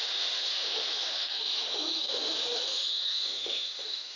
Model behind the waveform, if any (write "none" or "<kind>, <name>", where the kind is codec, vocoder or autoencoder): autoencoder, DAC-VAE